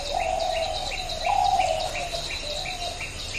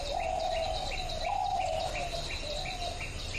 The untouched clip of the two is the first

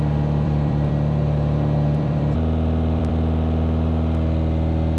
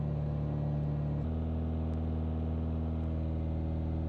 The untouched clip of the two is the second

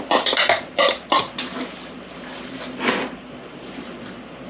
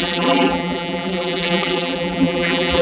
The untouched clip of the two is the first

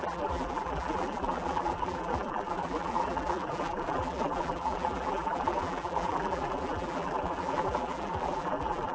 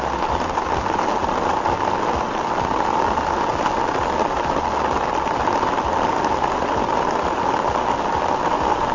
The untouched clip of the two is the second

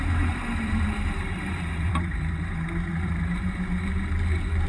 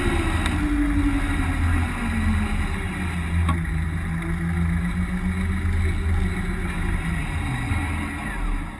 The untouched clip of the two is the second